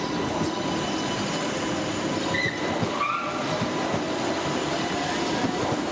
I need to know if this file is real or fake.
real